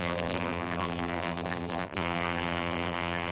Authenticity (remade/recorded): remade